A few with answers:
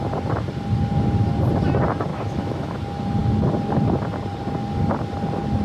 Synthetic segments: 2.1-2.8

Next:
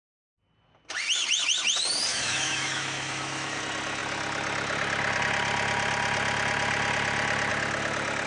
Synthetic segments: 2.1-3.6

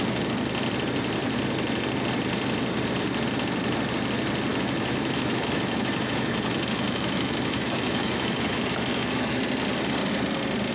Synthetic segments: 4.5-9.4

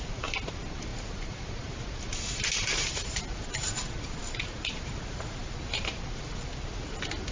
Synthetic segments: none

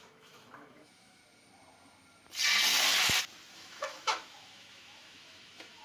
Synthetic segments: 0.0-1.2; 3.5-5.8

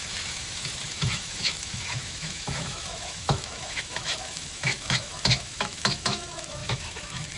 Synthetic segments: 0.0-7.4